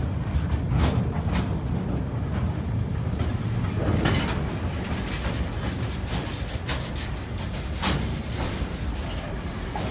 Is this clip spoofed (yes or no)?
no